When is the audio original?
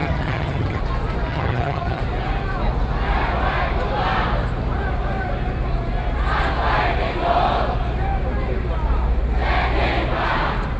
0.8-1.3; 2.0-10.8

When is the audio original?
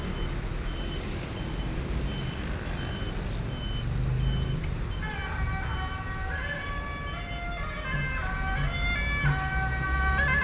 0.0-10.4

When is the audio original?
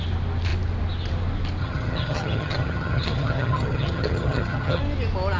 0.0-1.6; 4.8-5.4